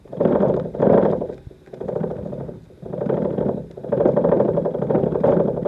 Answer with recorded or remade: recorded